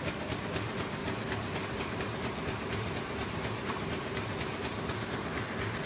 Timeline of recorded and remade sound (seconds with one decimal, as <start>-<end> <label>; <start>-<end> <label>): 0.0-1.0 recorded; 1.0-2.0 remade; 2.0-5.9 recorded